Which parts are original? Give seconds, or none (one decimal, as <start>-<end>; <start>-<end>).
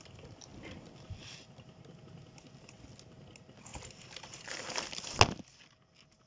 0.0-6.3